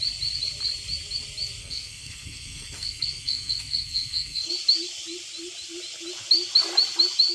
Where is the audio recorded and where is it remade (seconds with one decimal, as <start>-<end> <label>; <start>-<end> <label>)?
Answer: 0.0-1.6 recorded; 1.6-4.5 remade; 4.5-7.3 recorded